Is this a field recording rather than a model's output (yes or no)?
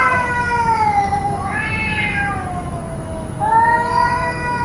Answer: no